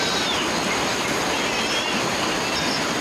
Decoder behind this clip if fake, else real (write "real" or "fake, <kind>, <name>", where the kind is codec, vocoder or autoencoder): real